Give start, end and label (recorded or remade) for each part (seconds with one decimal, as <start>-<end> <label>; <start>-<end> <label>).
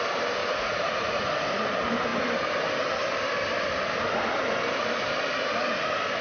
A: 0.0-0.4 recorded; 0.4-1.3 remade; 1.3-6.2 recorded